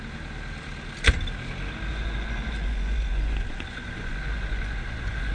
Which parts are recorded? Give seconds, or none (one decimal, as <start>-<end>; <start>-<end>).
0.0-1.9